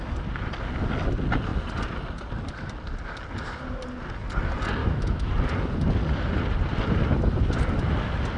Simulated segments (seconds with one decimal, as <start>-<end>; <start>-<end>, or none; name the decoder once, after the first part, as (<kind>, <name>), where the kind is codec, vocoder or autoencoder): 4.8-5.3 (autoencoder, DAC-VAE)